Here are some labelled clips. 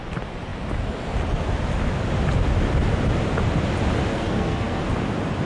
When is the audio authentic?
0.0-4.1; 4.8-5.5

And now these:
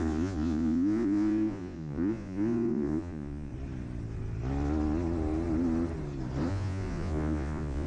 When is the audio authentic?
3.5-6.5

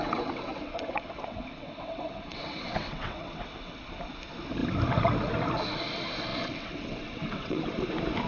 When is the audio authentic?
3.8-6.3; 7.8-8.3

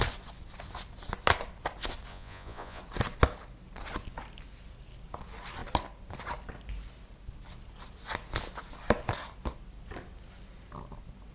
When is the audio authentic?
0.0-2.1; 2.8-11.3

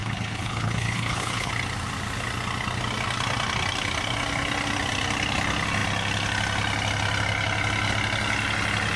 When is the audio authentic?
1.5-9.0